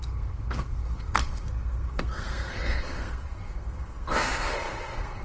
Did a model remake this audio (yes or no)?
yes